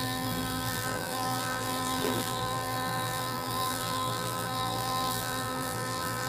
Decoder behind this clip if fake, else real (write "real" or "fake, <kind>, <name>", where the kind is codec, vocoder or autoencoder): fake, vocoder, BigVGAN v2